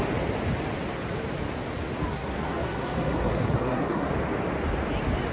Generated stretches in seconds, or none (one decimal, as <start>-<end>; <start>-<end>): 2.1-4.1